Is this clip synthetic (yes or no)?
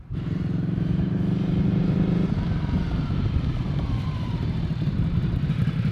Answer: yes